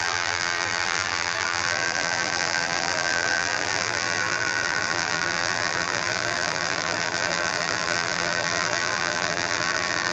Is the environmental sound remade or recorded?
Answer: remade